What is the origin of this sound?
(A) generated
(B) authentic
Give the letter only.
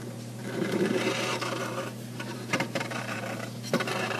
A